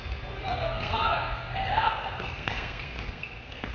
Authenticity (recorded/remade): remade